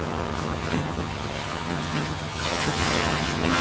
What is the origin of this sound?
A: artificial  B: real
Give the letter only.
A